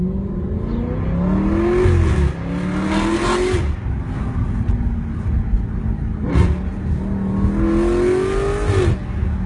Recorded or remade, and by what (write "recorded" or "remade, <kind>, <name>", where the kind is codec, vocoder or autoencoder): recorded